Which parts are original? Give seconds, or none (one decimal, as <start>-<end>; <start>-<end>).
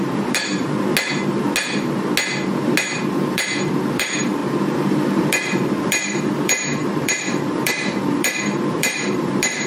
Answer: 0.6-3.0